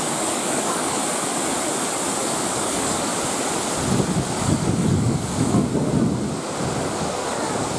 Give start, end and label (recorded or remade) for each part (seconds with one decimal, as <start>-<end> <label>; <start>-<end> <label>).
0.0-1.0 remade; 1.0-2.5 recorded; 2.5-3.1 remade; 3.1-4.1 recorded; 4.1-5.6 remade; 5.6-6.8 recorded; 6.8-7.8 remade